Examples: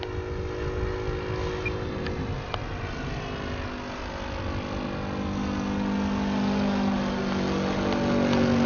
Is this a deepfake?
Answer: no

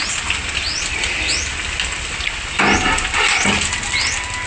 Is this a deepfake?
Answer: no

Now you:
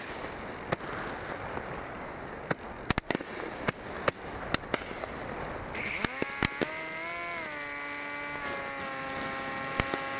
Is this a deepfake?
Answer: no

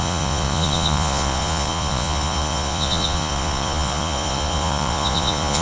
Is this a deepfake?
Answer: yes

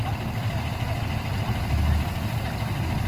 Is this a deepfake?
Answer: no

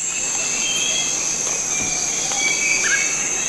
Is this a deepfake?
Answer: no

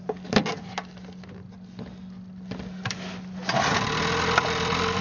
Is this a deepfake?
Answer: no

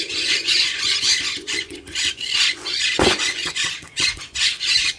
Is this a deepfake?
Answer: yes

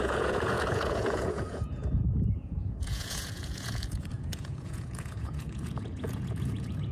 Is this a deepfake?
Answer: yes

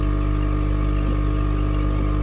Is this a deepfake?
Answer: no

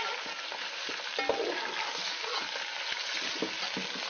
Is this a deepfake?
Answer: no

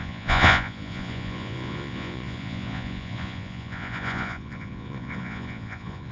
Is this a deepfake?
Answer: yes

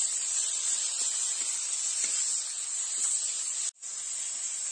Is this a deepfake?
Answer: no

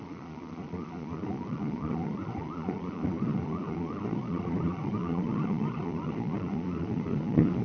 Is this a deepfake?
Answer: yes